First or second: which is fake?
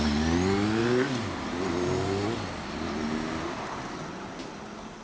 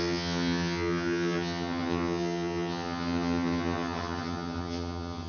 second